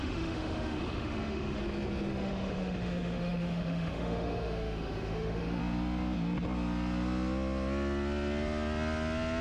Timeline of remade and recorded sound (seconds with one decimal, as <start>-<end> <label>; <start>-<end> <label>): 0.0-1.6 remade; 1.6-2.1 recorded; 2.1-5.6 remade; 5.6-9.4 recorded